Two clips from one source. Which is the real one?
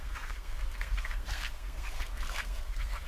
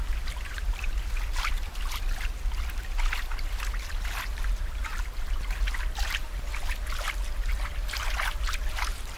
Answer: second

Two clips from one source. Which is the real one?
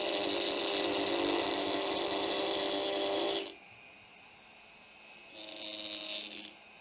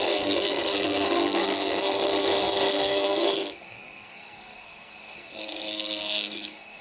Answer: first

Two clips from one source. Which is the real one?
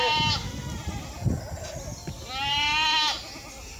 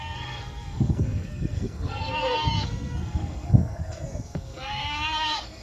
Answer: first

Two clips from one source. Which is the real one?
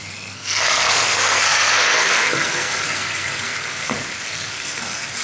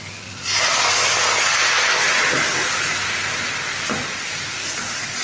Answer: second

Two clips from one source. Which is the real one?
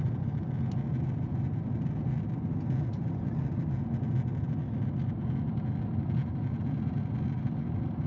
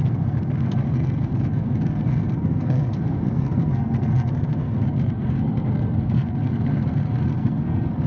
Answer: first